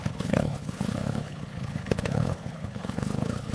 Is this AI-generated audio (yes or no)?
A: yes